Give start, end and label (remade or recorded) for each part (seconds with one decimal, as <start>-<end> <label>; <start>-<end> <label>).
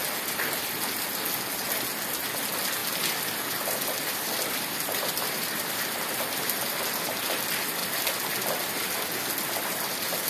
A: 0.0-2.8 recorded; 2.8-6.4 remade; 6.4-10.3 recorded